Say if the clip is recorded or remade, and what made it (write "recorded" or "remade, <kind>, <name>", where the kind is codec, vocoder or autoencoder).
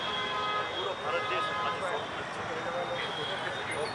recorded